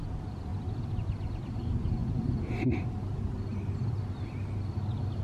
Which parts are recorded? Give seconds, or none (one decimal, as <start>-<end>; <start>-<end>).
0.5-1.4; 2.0-2.7; 3.5-4.7

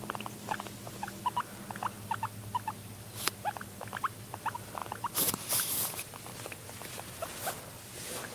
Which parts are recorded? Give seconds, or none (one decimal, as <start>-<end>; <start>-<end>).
0.0-8.3

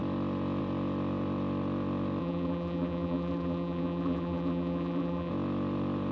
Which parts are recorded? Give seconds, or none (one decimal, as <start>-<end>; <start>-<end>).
0.0-2.2; 5.3-6.1